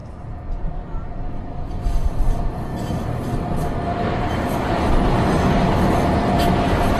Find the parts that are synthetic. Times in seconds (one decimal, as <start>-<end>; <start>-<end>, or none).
none